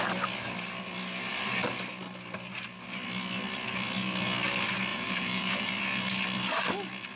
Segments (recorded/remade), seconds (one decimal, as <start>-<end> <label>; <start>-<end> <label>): 0.0-4.9 recorded; 4.9-5.7 remade; 5.7-7.2 recorded